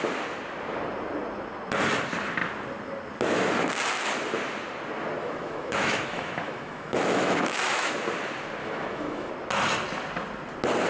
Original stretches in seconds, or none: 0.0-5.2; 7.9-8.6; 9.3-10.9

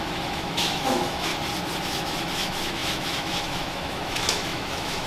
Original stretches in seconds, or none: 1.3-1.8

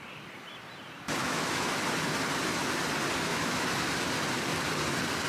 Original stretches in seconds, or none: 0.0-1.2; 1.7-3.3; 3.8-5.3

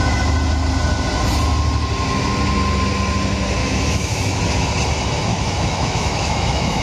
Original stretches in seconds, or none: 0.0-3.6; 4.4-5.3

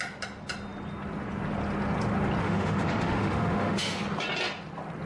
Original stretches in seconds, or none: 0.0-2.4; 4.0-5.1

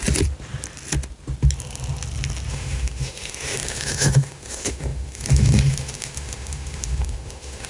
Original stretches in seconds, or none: 0.0-2.5

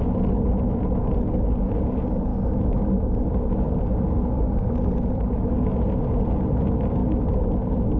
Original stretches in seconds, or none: 0.0-2.3; 2.8-8.0